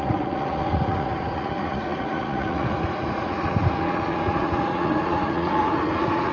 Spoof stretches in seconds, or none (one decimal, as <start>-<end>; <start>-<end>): 0.0-6.3